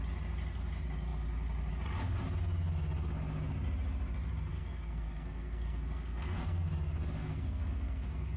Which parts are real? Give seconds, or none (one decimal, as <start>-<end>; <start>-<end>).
0.0-4.5; 6.7-7.2